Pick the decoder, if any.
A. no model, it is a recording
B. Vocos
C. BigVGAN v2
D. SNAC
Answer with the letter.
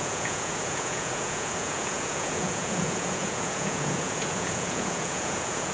B